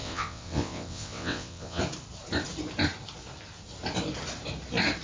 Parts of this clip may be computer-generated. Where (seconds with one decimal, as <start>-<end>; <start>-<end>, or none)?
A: 0.0-1.8